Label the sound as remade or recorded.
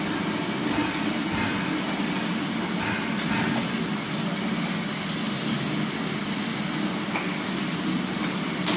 recorded